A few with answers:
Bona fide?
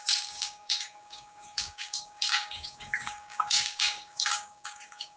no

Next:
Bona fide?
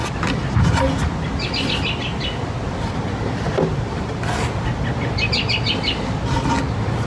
yes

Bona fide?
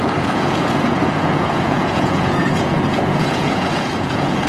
no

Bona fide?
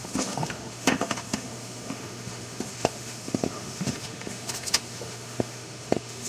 no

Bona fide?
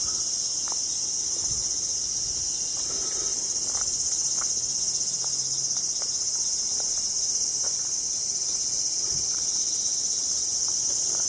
yes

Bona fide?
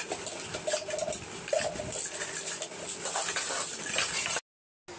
yes